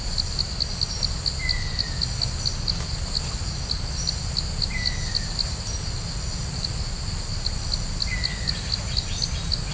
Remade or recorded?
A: recorded